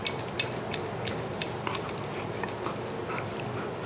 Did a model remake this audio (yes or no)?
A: no